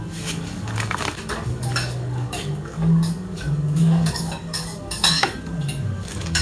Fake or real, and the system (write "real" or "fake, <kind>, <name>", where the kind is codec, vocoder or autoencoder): fake, codec, DAC